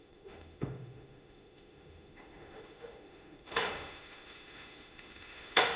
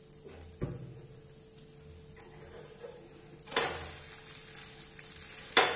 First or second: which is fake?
first